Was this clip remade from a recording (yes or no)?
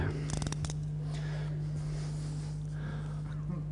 no